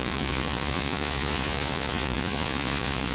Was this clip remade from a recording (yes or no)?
yes